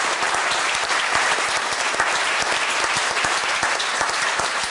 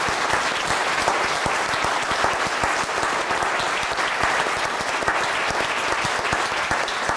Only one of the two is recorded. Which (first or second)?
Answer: second